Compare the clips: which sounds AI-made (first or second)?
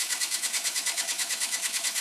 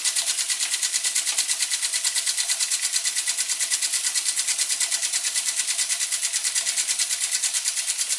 first